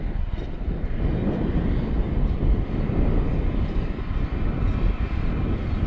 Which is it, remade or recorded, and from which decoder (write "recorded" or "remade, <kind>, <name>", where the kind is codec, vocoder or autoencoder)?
recorded